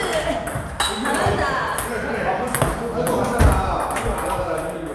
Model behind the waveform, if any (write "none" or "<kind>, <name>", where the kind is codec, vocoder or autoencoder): none